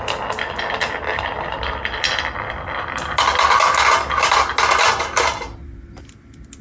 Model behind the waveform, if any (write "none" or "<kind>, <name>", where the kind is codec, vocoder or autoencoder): none